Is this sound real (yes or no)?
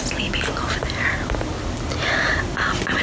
yes